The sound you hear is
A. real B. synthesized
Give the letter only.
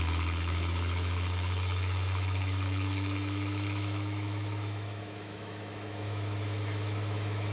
B